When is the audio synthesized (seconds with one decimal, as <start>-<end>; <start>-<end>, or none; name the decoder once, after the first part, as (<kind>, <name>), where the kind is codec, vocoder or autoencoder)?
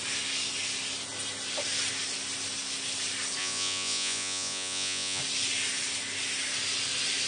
3.4-5.2 (vocoder, Vocos)